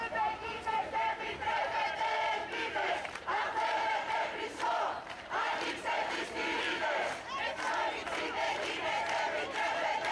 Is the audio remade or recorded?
remade